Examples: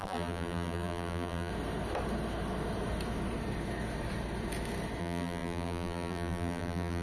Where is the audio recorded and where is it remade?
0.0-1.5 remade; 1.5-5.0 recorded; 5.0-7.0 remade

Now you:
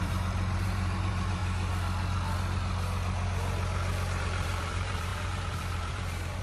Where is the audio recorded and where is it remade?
0.0-1.4 remade; 1.4-4.2 recorded; 4.2-6.4 remade

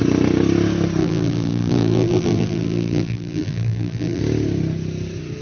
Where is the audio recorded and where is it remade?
0.0-1.0 recorded; 1.0-4.2 remade; 4.2-5.4 recorded

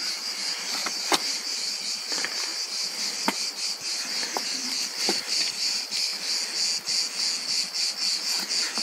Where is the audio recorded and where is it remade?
0.0-6.1 remade; 6.1-8.8 recorded

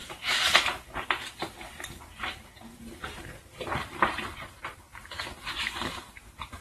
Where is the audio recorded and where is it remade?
0.0-4.0 recorded; 4.0-6.6 remade

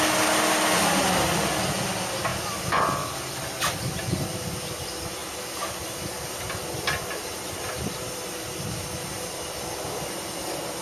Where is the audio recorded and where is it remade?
0.0-10.8 recorded